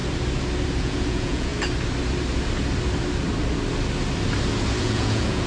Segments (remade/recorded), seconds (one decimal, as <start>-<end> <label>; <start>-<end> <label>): 0.0-0.8 recorded; 0.8-1.5 remade; 1.5-4.8 recorded; 4.8-5.5 remade